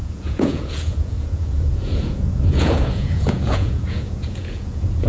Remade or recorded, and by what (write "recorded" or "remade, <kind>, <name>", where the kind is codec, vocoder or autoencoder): remade, vocoder, Vocos